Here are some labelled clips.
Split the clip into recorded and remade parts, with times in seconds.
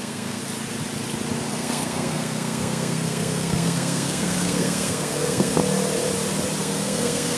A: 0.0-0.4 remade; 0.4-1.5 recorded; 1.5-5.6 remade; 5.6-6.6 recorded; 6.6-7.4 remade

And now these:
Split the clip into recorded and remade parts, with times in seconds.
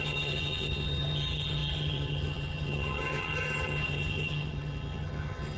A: 0.0-5.6 remade